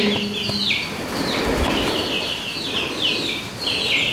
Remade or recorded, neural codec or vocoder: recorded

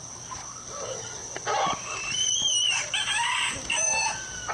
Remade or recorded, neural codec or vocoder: recorded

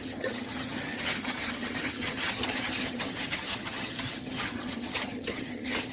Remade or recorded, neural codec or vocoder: remade, vocoder, HiFi-GAN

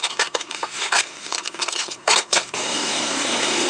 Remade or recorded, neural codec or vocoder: remade, codec, SNAC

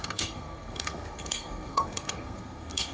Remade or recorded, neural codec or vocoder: remade, codec, SNAC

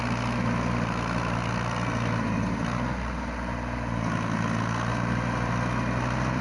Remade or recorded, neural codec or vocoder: recorded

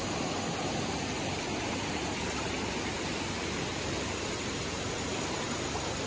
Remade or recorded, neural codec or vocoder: recorded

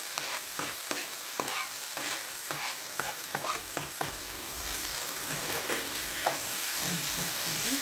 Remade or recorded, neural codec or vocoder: remade, codec, DAC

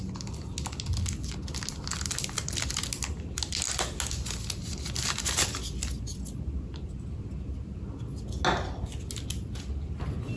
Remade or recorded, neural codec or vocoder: recorded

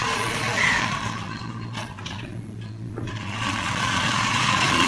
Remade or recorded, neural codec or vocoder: remade, vocoder, Vocos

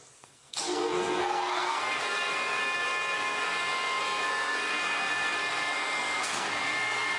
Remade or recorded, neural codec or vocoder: remade, codec, SNAC